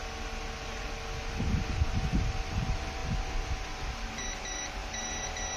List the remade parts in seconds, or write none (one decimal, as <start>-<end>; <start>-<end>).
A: 1.2-3.0; 3.8-5.6